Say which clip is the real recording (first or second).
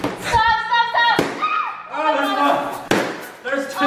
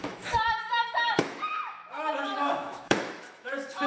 first